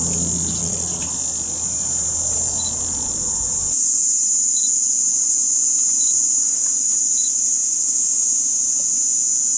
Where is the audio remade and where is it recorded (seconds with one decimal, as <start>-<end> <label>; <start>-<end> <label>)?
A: 0.0-0.6 recorded; 0.6-1.1 remade; 1.1-9.6 recorded